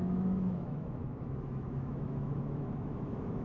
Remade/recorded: remade